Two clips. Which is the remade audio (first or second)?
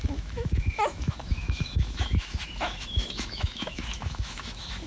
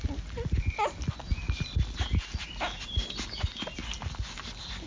first